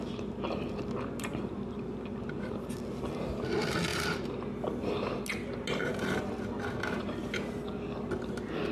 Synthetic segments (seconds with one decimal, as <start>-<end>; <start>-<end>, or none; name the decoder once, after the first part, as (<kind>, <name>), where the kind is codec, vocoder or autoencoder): none